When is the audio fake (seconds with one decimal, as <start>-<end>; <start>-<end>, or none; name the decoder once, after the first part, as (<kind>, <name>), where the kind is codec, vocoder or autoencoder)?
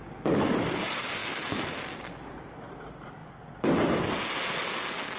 1.2-2.0 (autoencoder, DAC-VAE)